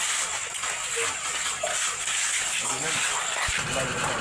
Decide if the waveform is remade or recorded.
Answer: recorded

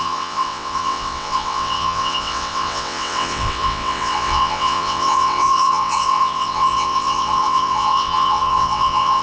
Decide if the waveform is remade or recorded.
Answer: remade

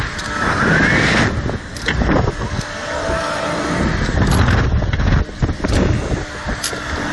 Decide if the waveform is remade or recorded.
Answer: recorded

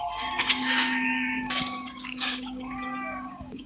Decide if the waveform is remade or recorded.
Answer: remade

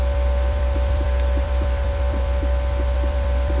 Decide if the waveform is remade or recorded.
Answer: remade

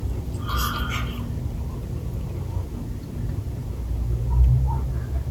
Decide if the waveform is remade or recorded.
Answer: recorded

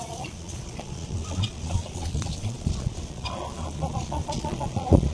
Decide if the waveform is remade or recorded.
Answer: remade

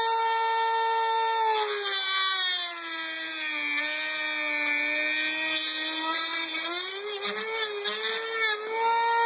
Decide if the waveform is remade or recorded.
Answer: recorded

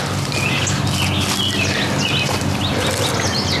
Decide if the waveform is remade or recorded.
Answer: recorded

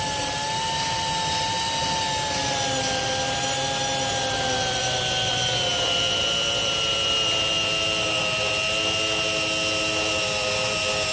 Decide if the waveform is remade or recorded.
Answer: recorded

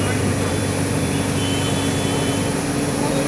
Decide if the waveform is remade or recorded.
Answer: remade